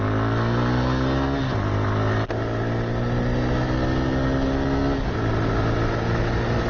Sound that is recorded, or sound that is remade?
recorded